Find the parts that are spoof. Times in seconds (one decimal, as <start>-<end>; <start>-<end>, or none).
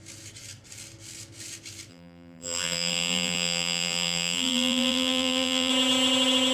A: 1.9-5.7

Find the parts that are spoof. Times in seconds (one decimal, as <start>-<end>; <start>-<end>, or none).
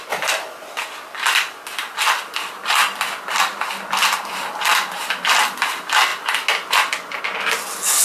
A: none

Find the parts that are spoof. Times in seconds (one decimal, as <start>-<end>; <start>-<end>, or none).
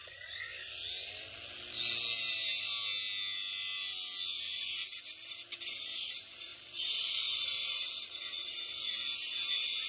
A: 4.3-4.8; 5.3-9.9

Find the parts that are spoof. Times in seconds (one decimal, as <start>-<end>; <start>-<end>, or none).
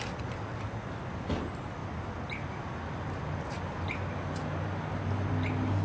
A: none